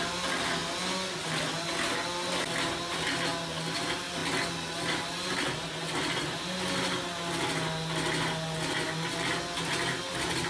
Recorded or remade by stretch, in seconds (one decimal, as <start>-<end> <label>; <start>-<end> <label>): 0.0-10.5 recorded